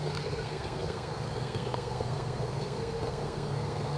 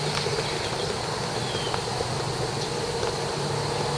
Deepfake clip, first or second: first